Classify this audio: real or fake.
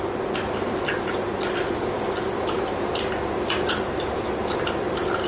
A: real